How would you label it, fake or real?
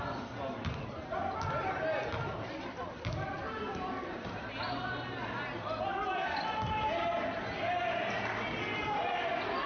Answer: real